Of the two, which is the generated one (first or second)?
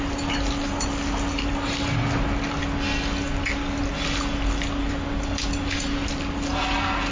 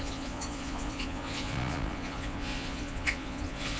second